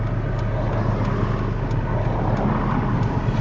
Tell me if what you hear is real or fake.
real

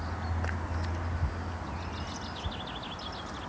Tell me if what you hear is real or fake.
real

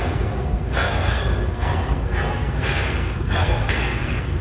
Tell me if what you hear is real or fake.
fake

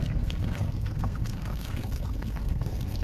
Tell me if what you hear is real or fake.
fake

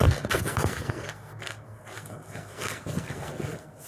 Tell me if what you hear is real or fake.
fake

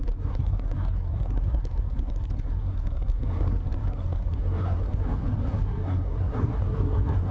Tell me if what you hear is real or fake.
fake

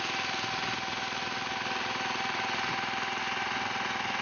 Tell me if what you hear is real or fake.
real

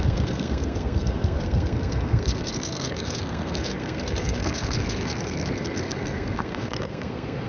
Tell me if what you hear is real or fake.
fake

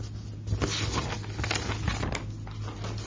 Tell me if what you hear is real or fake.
real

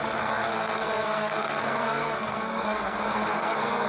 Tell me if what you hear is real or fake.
fake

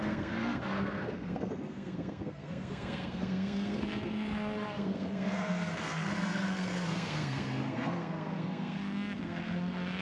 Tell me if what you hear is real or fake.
fake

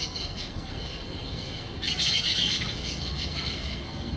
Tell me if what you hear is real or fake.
fake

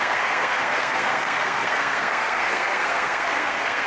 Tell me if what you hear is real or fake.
fake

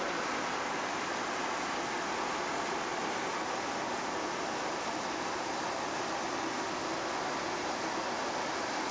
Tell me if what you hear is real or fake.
real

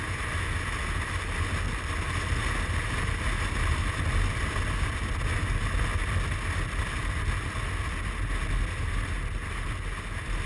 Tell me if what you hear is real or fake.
real